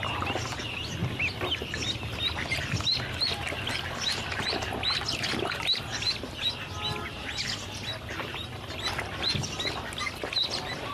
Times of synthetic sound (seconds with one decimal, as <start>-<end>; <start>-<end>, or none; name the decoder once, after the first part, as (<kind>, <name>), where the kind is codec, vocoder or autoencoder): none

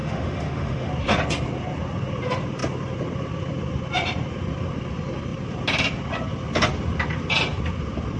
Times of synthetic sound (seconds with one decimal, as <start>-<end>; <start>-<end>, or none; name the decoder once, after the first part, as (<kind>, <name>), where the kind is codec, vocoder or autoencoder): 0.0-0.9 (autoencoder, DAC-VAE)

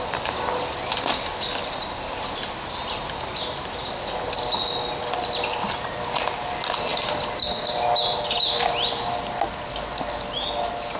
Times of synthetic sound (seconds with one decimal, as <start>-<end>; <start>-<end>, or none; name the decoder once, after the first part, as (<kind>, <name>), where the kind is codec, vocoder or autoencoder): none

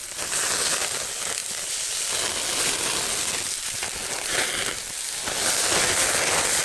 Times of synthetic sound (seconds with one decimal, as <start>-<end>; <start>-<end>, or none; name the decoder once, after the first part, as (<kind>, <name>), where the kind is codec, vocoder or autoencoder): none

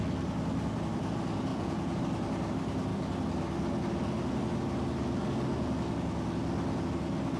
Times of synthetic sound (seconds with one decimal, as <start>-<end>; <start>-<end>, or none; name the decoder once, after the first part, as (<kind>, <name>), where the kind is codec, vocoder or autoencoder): 1.5-2.0 (vocoder, Vocos)

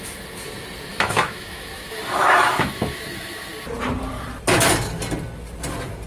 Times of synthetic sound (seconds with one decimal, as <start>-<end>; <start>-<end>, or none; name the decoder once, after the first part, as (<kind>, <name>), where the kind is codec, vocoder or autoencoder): 0.9-3.5 (autoencoder, DAC-VAE)

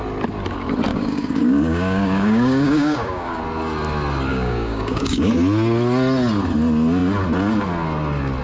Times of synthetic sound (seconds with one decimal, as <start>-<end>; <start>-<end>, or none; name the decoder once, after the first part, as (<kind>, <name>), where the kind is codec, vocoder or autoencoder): 0.9-3.4 (codec, DAC); 4.3-5.3

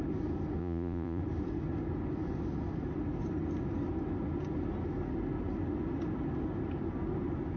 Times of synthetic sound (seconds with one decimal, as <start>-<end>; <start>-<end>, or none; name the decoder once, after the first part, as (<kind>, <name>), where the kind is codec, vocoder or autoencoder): 0.6-1.2 (vocoder, Vocos)